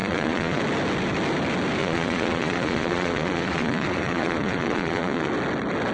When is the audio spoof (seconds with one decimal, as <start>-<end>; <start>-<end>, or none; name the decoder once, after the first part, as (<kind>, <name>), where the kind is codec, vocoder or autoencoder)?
0.0-0.6 (vocoder, Vocos); 1.8-5.3